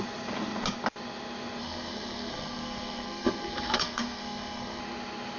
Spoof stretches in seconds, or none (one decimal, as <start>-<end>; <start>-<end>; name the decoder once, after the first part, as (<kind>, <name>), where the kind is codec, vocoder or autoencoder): 1.6-4.8 (codec, SNAC)